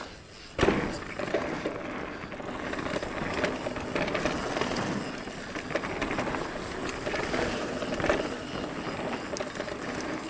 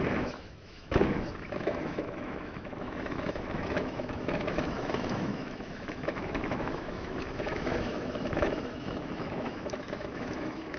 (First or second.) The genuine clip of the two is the first